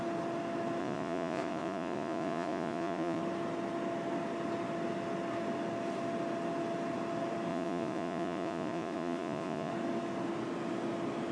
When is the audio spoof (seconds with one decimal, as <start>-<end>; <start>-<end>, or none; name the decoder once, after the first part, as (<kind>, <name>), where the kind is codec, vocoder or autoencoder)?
0.8-3.2 (vocoder, Vocos); 7.5-9.7